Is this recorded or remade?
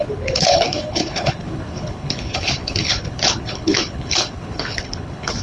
remade